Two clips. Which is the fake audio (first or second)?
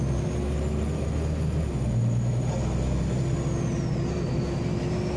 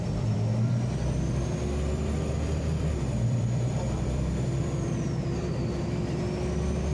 second